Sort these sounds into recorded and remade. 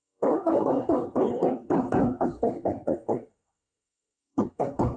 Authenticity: remade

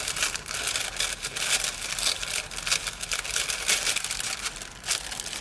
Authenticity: recorded